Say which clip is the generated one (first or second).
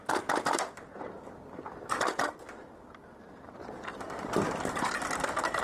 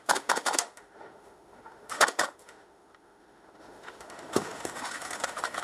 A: second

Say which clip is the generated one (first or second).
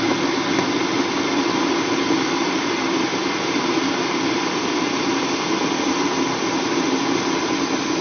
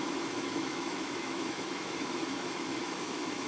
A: second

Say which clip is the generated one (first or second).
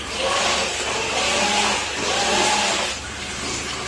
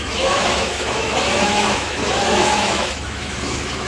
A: second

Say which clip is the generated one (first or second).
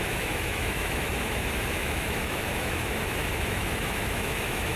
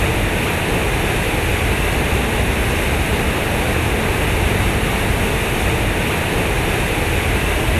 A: first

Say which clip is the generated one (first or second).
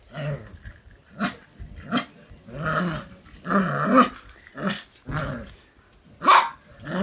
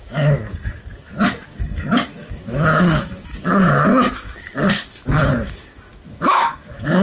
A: second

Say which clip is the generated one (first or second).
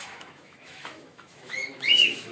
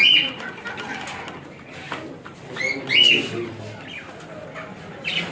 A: first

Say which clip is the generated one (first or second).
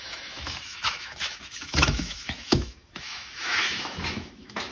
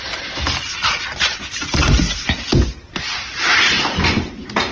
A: first